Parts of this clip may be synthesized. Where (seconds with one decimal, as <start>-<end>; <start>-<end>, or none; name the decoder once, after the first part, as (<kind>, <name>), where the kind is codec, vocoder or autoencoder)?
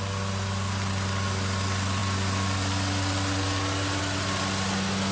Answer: none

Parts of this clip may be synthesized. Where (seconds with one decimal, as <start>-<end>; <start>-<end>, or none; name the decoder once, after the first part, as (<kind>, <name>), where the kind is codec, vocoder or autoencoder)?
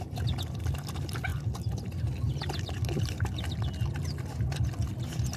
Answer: none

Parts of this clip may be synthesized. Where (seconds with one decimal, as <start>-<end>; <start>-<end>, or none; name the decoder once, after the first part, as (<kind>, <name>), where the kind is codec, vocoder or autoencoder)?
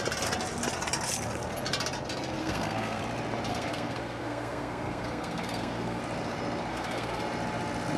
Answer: 2.4-3.0 (codec, SNAC); 3.5-6.0; 6.7-7.2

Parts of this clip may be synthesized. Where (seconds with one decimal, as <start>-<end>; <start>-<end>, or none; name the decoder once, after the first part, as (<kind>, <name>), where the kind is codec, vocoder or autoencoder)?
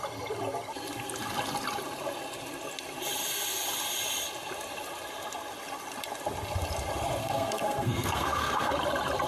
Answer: 7.2-8.7 (codec, SNAC)